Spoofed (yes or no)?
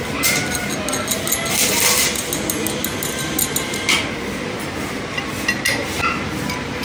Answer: no